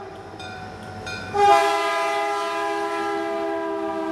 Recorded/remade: recorded